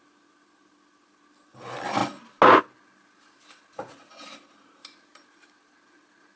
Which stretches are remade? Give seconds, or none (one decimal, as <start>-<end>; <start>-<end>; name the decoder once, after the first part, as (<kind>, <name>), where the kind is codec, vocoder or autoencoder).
none